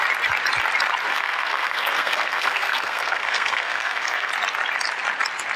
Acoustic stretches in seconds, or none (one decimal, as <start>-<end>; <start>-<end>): 0.0-1.1; 4.3-5.6